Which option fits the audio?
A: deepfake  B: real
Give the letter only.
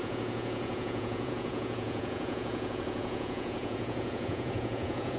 A